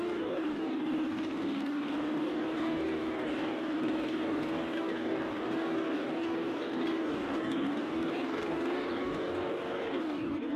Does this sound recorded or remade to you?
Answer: remade